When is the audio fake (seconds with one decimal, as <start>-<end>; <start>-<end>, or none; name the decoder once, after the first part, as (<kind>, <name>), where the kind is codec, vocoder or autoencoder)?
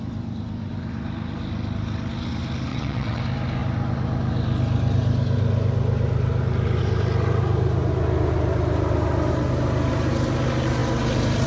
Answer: 2.7-3.2 (vocoder, WaveNeXt)